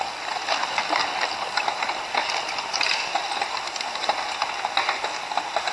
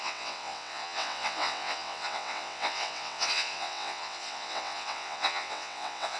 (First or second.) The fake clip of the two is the second